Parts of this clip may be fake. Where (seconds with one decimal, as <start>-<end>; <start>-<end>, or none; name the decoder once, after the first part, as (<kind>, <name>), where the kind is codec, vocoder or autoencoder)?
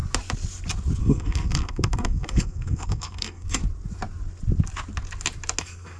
1.0-3.6 (codec, SNAC); 5.6-6.0